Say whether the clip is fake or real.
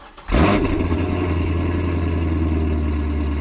real